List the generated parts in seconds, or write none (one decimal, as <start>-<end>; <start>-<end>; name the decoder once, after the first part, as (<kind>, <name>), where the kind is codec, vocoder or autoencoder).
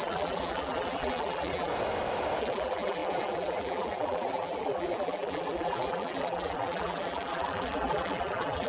0.0-1.7 (vocoder, BigVGAN v2); 2.4-8.7